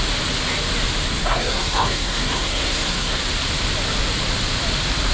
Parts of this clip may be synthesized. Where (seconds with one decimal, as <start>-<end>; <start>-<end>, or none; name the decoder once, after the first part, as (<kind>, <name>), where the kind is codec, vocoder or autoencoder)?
1.2-3.2 (codec, SNAC)